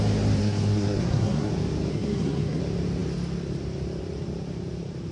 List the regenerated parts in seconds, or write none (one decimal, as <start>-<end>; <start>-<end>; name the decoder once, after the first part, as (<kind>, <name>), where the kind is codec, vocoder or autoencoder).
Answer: 0.4-1.5 (codec, SNAC); 1.9-2.6